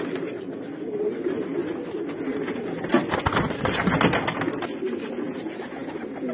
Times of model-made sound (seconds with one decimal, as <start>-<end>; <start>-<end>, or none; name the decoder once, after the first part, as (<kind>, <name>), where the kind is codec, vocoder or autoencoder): none